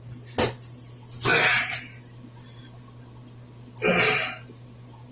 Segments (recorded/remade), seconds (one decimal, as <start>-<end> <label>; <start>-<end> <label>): 0.0-5.1 recorded